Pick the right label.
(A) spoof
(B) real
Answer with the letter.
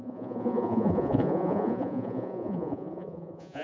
A